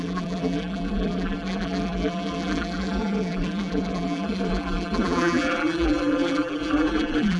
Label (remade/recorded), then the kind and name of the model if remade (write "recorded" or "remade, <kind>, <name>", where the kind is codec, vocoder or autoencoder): remade, vocoder, BigVGAN v2